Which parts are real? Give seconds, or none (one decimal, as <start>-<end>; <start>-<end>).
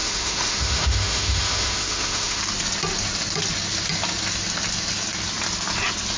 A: 2.4-6.2